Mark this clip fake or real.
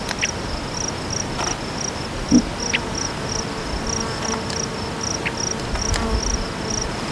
real